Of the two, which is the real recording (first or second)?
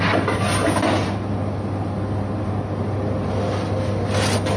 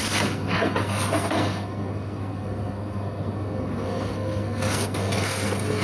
first